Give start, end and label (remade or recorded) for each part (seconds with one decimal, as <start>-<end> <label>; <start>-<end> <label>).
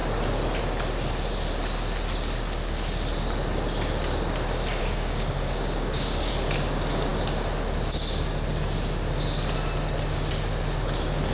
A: 0.0-4.8 recorded; 4.8-6.3 remade; 6.3-11.3 recorded